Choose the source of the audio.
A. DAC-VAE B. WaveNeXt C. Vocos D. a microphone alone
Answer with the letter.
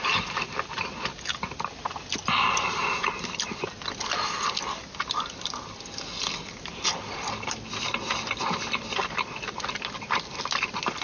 D